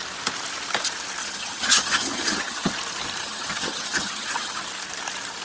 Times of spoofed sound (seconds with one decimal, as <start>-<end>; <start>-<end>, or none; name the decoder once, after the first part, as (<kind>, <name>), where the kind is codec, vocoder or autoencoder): 1.2-2.7 (vocoder, HiFi-GAN); 3.2-4.6